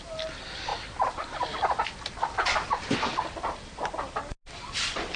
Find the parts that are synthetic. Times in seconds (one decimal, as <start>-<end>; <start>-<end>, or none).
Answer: none